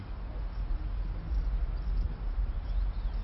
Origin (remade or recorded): recorded